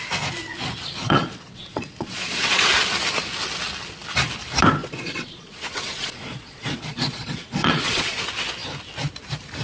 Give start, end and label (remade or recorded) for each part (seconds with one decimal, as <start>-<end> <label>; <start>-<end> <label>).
0.0-1.0 recorded; 1.0-2.7 remade; 2.7-4.8 recorded; 4.8-8.2 remade; 8.2-9.6 recorded